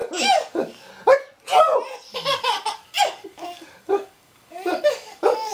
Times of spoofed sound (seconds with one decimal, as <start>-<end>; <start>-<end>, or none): 0.0-0.9; 2.1-5.5